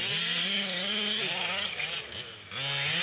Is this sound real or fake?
real